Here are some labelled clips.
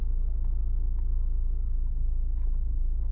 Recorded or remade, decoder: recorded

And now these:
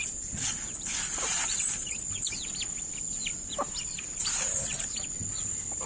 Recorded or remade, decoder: recorded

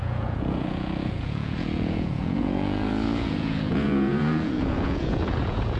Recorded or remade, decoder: remade, vocoder, Vocos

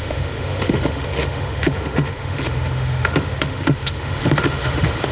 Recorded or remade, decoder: remade, autoencoder, DAC-VAE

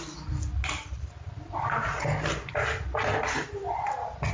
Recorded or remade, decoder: recorded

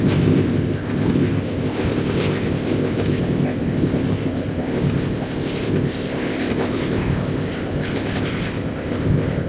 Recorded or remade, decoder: remade, codec, ZipCodec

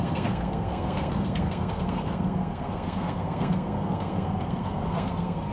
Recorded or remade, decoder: remade, codec, SNAC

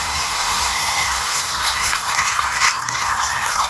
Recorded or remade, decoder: remade, codec, SNAC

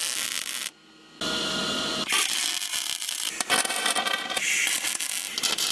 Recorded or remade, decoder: recorded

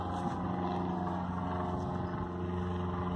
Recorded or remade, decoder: recorded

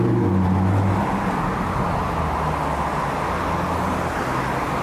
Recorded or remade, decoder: recorded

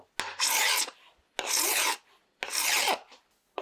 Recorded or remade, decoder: recorded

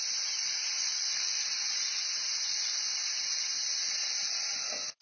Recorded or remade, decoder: recorded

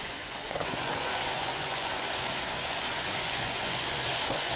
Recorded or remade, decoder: remade, vocoder, Vocos